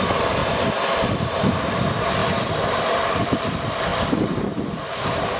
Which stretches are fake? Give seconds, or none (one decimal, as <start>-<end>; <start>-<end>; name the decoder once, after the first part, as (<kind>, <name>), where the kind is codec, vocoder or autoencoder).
0.0-2.2 (vocoder, BigVGAN v2); 2.8-5.4